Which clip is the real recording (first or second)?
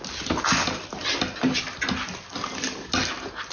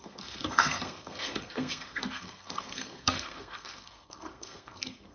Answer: first